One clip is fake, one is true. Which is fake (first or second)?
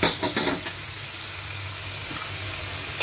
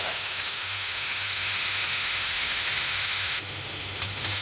second